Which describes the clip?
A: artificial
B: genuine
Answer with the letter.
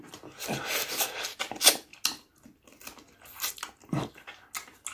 B